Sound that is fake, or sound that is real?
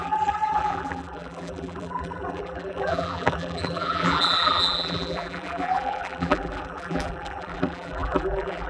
fake